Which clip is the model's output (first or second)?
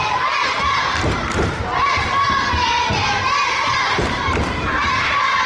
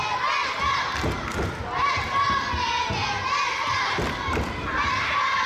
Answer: first